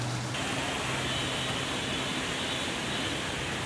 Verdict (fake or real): real